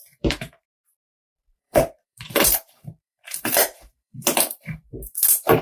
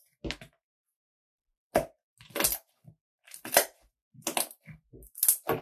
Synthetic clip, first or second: first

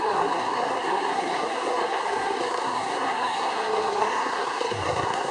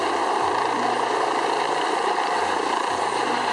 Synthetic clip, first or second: first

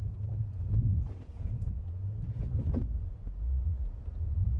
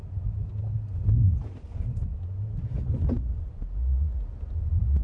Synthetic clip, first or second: first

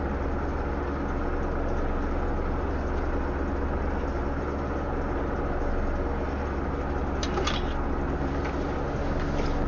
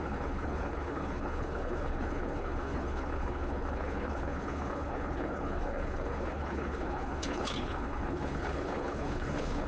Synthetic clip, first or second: second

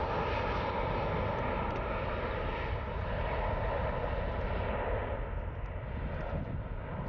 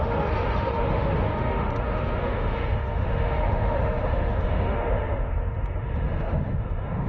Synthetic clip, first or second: second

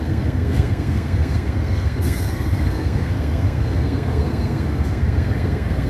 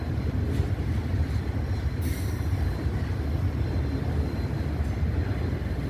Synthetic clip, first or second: first